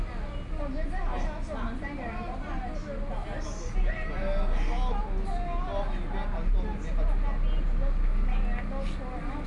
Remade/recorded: recorded